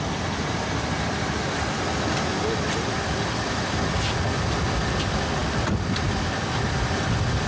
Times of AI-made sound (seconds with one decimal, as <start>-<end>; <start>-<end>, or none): none